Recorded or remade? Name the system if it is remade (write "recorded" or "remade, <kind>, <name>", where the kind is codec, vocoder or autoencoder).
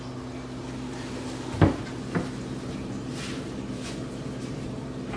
recorded